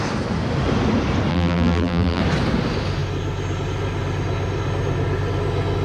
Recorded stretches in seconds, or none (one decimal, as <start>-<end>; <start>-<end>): 0.0-1.3; 2.2-5.8